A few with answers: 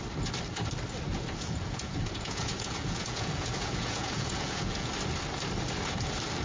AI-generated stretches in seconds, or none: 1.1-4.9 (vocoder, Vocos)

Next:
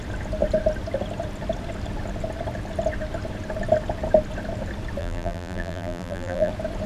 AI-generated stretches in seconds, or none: 5.0-6.5 (vocoder, BigVGAN v2)

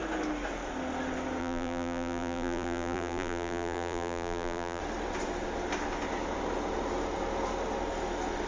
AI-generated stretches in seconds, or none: 1.4-4.8 (vocoder, BigVGAN v2)

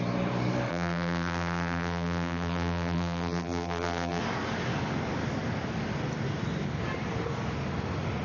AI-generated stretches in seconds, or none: 0.7-4.2 (vocoder, BigVGAN v2)

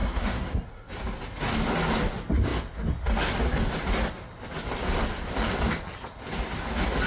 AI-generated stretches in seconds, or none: 0.0-0.9 (codec, SNAC)

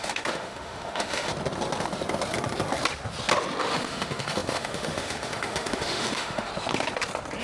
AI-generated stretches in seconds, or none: 0.0-1.3 (autoencoder, DAC-VAE); 3.6-6.5

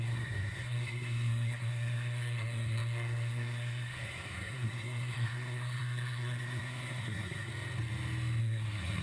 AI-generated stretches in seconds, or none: 0.0-7.5 (codec, SNAC); 8.4-9.0